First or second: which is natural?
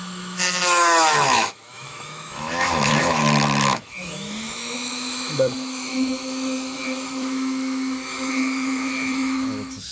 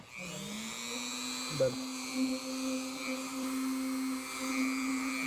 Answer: second